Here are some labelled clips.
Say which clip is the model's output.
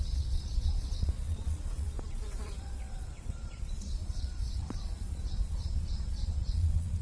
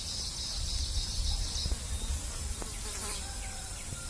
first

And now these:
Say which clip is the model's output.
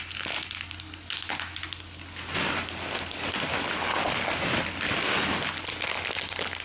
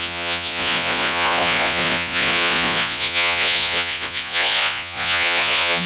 second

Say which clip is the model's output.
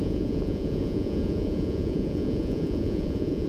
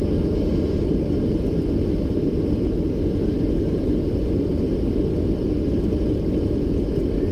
first